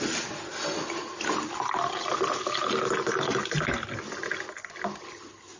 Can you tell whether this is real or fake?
real